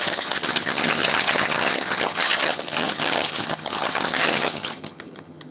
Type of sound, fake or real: fake